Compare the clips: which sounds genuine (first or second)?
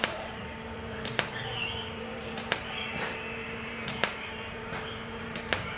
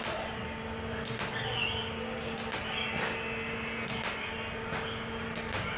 second